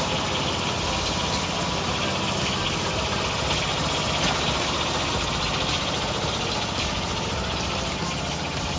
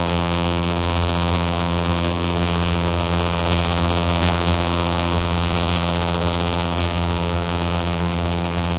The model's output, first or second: second